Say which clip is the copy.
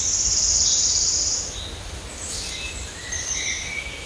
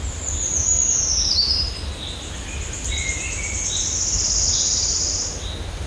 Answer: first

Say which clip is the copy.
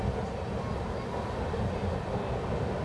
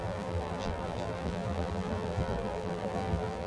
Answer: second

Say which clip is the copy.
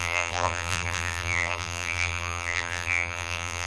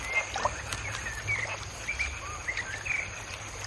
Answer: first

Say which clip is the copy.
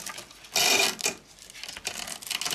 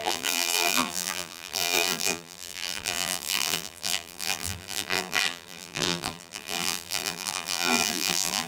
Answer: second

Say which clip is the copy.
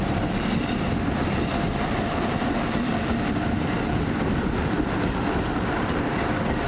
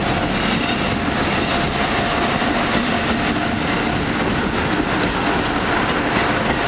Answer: first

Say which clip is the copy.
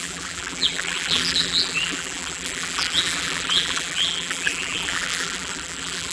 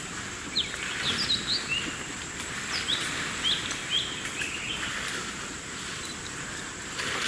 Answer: first